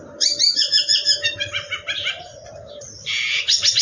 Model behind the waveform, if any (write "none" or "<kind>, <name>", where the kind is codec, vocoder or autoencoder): none